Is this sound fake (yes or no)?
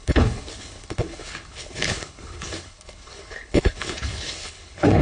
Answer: yes